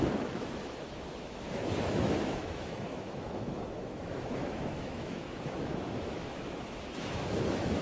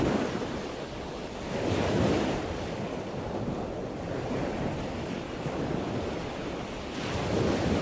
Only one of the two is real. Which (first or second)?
second